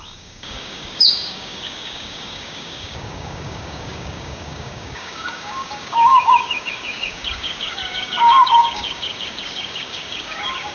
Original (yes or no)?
no